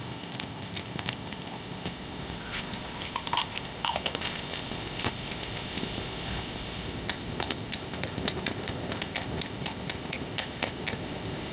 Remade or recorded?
remade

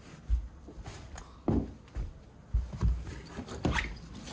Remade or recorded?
recorded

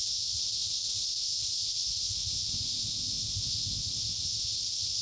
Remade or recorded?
remade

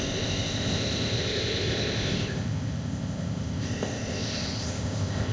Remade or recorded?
remade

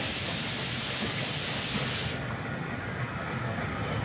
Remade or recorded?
recorded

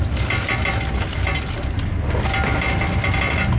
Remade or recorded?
recorded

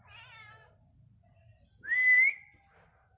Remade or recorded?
recorded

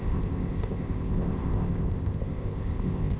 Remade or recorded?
remade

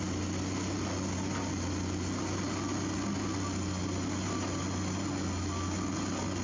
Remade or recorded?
recorded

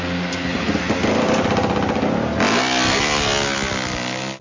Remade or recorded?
recorded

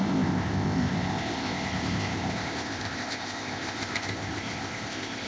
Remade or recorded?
remade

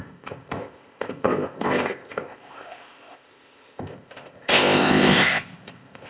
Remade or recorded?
remade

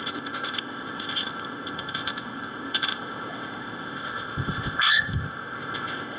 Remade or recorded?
remade